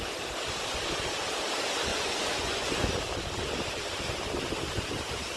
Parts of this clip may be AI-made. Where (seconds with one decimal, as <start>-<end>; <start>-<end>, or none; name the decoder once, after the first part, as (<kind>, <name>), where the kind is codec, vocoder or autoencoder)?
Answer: 1.9-2.9 (vocoder, Vocos)